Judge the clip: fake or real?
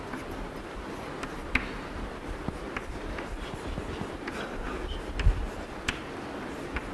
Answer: real